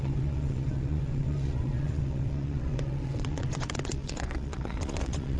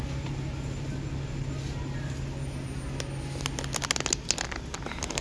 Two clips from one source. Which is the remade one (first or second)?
first